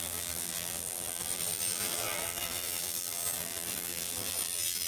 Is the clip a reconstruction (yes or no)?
yes